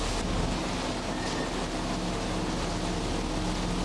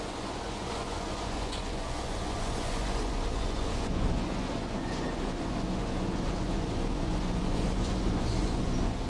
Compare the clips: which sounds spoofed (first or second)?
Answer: second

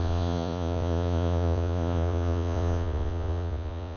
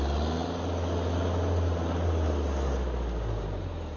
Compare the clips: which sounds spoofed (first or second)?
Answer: first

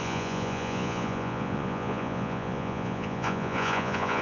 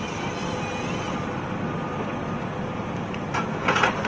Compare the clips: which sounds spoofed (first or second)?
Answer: first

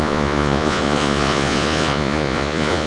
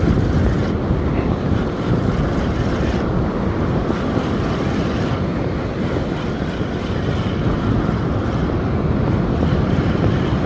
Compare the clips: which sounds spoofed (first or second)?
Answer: first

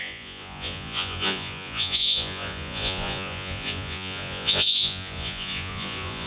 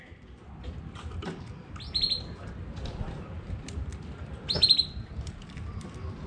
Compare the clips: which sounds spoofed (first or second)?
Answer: first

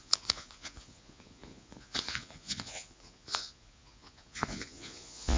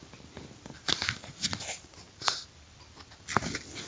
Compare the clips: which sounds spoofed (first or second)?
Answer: first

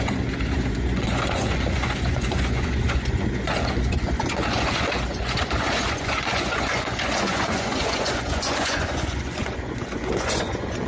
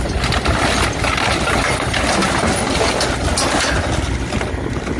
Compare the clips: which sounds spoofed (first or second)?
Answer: first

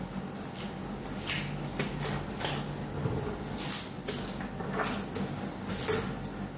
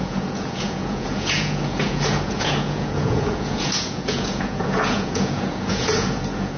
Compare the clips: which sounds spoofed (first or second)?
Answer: second